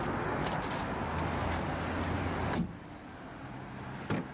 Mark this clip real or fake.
real